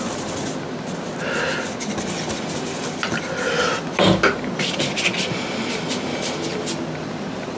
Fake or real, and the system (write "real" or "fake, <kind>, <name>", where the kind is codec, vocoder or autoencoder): real